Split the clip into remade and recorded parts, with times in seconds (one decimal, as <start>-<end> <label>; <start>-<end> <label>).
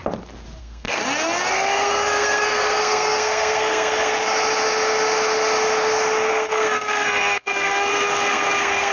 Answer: 0.0-0.6 recorded; 0.6-1.0 remade; 1.0-1.5 recorded; 1.5-4.1 remade; 4.1-6.3 recorded; 6.3-8.9 remade